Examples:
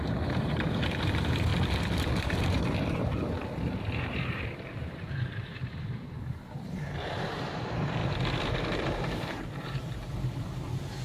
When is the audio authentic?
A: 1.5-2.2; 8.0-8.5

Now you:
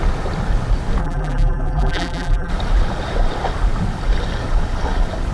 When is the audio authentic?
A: 0.0-1.0; 2.5-5.3

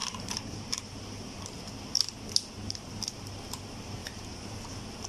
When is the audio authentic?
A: 1.4-4.0; 4.6-5.1

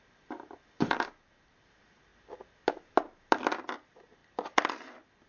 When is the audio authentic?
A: 0.0-4.2